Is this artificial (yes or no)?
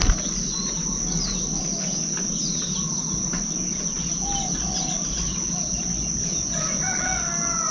no